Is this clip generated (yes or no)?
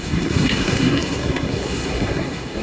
yes